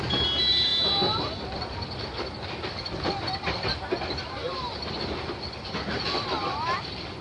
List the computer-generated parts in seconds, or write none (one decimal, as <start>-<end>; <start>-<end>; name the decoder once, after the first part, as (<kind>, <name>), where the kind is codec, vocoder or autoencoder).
none